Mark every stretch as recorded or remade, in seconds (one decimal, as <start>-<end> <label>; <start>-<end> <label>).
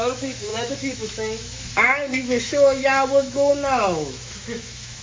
0.0-5.0 remade